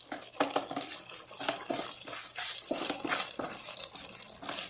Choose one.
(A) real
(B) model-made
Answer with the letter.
A